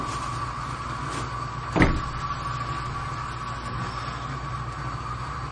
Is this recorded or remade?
recorded